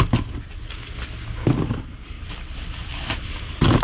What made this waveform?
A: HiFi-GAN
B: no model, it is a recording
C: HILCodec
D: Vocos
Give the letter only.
B